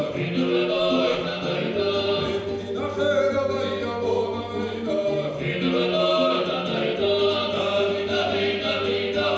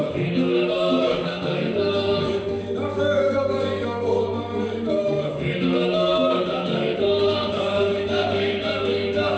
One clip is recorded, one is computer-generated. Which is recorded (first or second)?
first